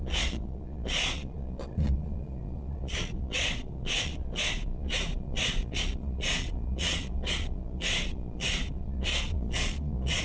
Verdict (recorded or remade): remade